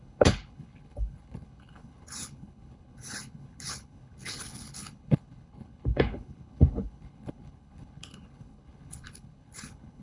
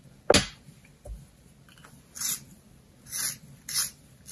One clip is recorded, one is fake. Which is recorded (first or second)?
second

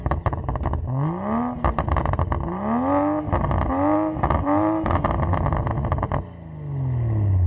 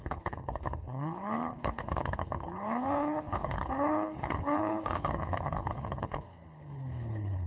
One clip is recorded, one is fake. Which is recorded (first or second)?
first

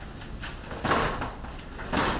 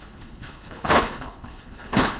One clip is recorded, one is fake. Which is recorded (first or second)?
first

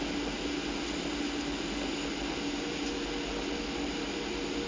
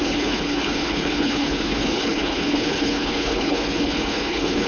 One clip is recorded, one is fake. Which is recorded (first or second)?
first